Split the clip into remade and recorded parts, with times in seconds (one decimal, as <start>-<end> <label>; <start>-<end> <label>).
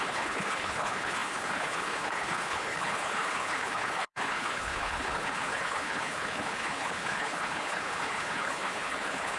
0.0-9.4 remade